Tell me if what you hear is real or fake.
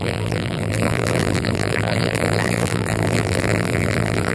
fake